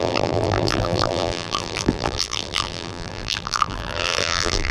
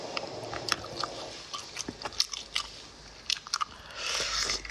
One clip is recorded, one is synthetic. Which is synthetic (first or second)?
first